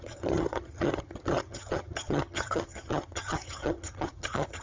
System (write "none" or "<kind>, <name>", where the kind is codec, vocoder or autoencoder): vocoder, HiFi-GAN